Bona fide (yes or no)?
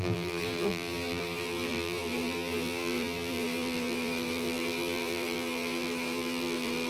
no